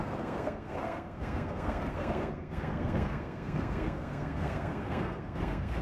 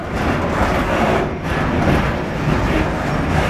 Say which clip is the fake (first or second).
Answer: first